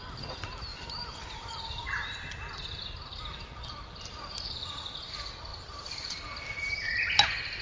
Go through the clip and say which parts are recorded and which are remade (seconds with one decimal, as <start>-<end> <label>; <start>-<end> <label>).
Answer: 0.0-0.7 recorded; 0.7-4.1 remade; 4.1-5.5 recorded; 5.5-7.1 remade; 7.1-7.6 recorded